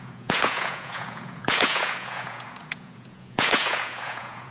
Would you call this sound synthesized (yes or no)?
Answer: yes